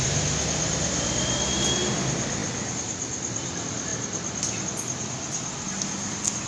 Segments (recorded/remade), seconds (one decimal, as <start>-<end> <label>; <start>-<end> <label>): 0.0-6.5 recorded